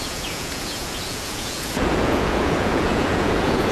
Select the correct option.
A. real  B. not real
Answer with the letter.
B